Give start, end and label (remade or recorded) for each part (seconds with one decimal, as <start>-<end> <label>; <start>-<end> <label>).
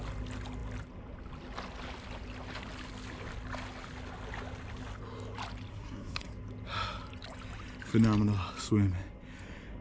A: 0.0-5.7 recorded; 5.7-6.3 remade; 6.3-9.8 recorded